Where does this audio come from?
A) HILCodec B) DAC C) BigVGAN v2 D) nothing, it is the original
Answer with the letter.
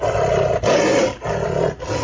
D